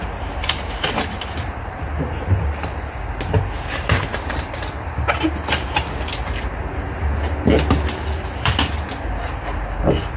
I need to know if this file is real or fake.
real